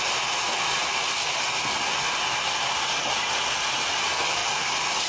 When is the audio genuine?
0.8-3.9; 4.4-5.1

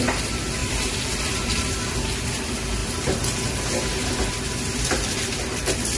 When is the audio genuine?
0.0-0.6; 1.7-6.0

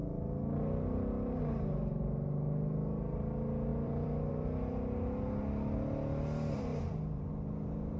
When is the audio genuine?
0.0-3.7; 4.3-6.7; 7.3-8.0

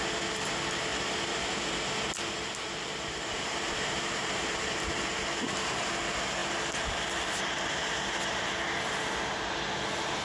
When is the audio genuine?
0.0-0.9; 4.9-10.2

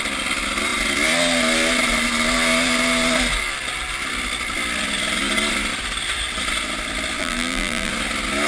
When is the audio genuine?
0.0-7.2; 7.9-8.5